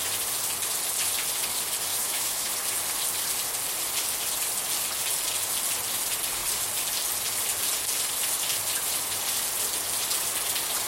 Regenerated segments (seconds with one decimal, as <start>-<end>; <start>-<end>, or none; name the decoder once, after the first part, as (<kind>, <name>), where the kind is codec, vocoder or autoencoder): 1.9-2.5 (autoencoder, DAC-VAE)